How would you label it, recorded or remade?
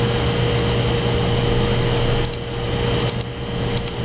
recorded